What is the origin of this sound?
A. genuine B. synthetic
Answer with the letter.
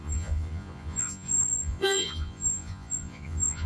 B